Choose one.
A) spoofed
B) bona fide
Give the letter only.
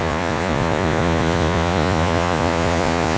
A